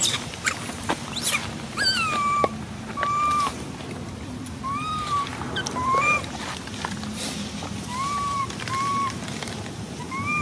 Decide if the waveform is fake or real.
fake